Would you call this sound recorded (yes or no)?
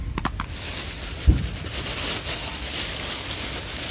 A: yes